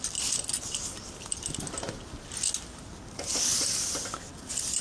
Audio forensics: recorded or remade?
recorded